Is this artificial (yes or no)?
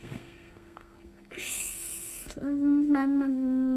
yes